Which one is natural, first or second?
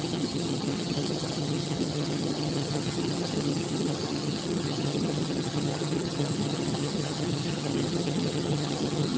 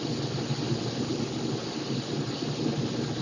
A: second